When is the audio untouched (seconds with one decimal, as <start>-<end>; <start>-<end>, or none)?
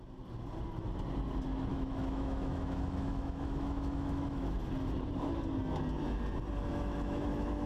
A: 0.0-1.7; 4.6-6.7